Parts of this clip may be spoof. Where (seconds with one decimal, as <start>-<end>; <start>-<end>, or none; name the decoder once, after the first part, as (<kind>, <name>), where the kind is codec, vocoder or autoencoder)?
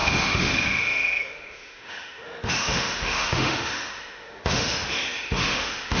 0.0-6.0 (autoencoder, DAC-VAE)